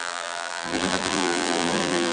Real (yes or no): no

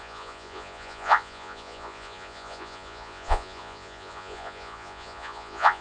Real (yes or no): no